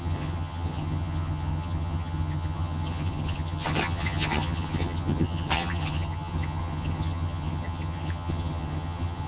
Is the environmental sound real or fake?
fake